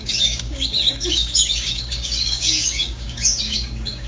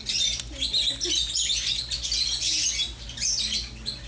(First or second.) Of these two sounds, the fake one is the first